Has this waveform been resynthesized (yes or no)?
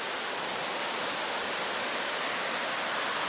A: no